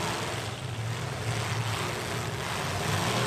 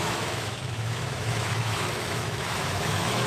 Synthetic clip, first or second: second